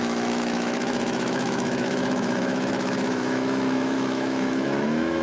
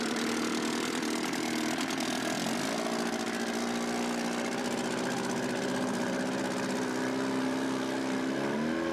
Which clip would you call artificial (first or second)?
first